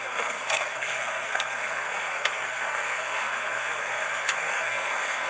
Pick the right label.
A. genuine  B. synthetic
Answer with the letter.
B